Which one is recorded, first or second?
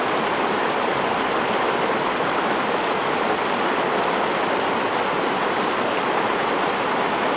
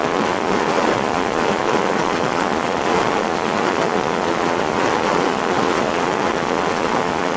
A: first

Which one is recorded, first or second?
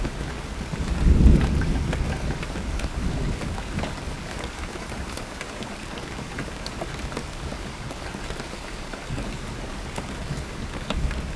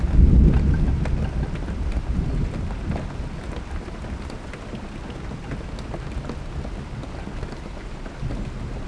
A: second